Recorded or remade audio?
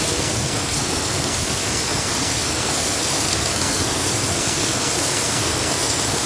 remade